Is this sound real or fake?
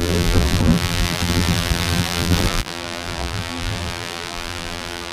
fake